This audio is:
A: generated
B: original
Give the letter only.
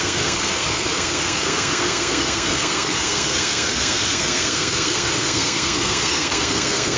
A